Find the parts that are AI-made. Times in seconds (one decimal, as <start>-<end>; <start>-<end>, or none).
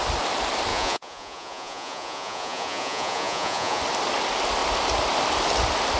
0.7-3.8